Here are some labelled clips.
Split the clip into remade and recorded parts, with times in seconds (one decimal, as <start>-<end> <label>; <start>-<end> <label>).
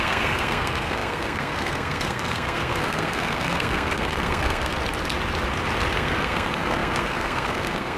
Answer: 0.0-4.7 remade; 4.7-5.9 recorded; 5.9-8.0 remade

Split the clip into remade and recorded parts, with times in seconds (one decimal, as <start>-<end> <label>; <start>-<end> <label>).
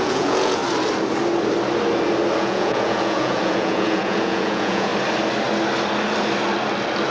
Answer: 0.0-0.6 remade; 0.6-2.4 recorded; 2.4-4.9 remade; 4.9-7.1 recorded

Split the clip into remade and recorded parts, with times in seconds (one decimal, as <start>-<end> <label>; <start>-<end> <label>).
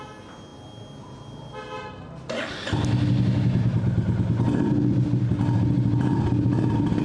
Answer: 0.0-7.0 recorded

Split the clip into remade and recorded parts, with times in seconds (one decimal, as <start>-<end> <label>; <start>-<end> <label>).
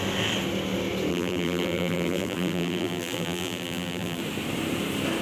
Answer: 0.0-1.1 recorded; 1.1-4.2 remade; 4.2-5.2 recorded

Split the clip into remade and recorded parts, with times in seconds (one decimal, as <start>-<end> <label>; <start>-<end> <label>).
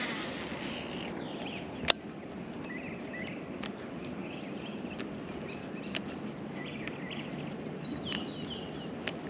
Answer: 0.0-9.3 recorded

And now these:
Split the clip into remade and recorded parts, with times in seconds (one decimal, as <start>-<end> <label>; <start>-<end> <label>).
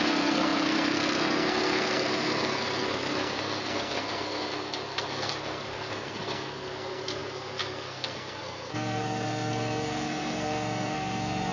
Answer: 0.0-11.5 remade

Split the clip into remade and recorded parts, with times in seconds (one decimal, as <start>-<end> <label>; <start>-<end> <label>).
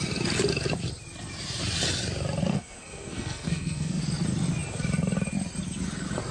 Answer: 0.0-2.5 recorded; 2.5-4.0 remade; 4.0-6.3 recorded